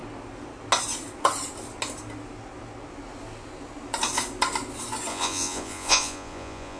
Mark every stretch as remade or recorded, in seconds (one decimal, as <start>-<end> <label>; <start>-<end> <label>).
0.0-5.1 recorded; 5.1-6.8 remade